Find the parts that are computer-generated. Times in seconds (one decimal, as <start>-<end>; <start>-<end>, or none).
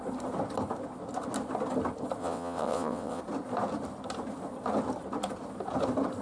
2.2-3.2